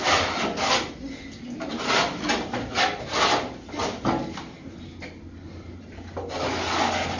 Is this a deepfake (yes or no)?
no